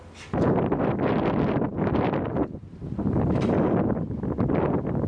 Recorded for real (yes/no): yes